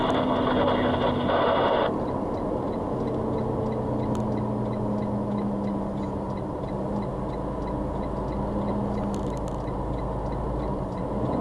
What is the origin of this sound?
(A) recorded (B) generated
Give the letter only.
A